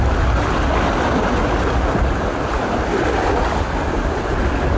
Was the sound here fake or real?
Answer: real